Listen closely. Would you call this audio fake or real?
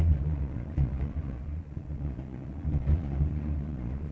fake